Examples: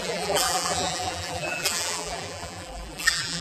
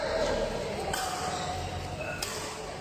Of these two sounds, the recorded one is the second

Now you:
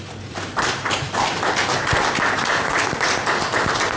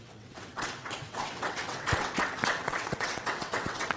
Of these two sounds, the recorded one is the first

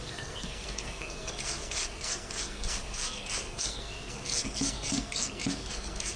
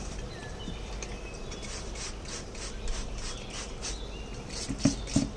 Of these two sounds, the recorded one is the second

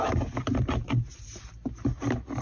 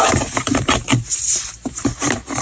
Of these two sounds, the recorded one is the first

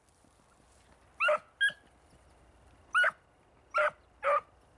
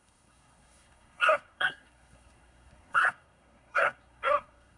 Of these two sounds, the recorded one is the first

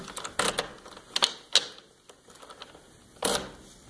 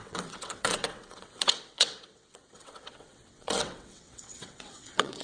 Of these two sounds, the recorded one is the first